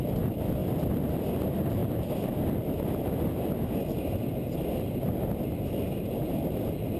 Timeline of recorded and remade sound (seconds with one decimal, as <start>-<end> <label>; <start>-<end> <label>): 0.0-0.6 recorded; 0.6-1.2 remade; 1.2-7.0 recorded